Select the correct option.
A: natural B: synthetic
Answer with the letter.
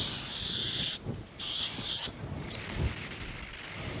A